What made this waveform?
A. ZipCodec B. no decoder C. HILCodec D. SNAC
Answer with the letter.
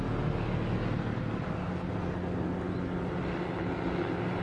B